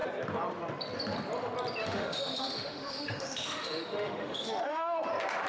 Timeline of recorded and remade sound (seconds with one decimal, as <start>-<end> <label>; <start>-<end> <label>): 0.0-1.8 recorded; 1.8-5.1 remade; 5.1-5.5 recorded